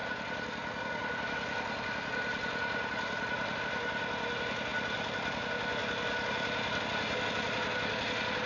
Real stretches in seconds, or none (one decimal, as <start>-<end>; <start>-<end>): 0.0-8.5

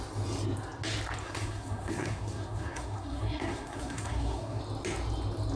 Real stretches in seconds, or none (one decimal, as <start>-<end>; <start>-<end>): 0.0-1.2; 4.6-5.6

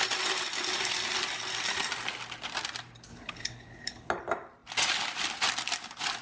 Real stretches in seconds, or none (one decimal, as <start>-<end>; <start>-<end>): 0.0-3.1; 4.1-6.2

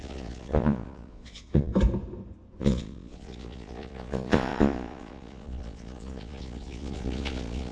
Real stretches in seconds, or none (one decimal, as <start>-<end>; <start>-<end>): 1.7-2.6

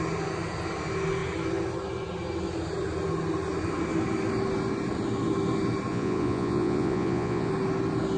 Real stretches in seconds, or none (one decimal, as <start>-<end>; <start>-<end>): 0.0-5.9; 7.5-8.2

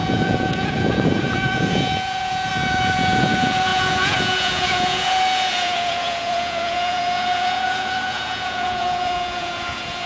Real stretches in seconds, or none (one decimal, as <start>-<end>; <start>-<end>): none

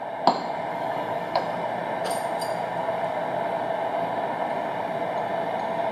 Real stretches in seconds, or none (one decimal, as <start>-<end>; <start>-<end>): 0.0-0.7; 1.4-5.9

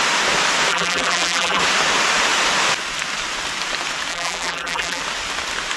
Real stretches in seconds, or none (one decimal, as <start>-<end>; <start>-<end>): 0.0-0.7; 1.6-4.1; 5.0-5.8